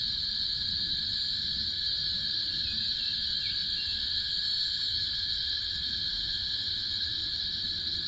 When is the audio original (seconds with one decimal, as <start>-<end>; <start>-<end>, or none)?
0.0-8.1